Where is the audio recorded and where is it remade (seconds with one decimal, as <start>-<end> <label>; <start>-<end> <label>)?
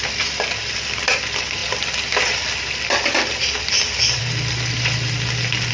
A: 0.0-5.7 remade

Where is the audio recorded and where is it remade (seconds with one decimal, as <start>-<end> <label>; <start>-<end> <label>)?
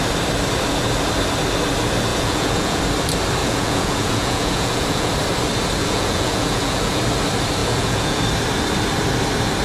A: 0.0-2.1 recorded; 2.1-2.8 remade; 2.8-3.4 recorded; 3.4-5.1 remade; 5.1-5.8 recorded; 5.8-7.0 remade; 7.0-7.6 recorded; 7.6-8.2 remade; 8.2-9.6 recorded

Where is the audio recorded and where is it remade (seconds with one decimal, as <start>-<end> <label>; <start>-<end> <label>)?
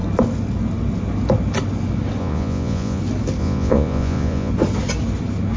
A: 0.0-2.2 recorded; 2.2-3.0 remade; 3.0-3.4 recorded; 3.4-4.5 remade; 4.5-5.6 recorded